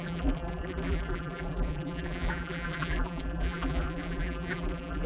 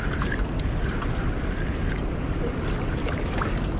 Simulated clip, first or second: first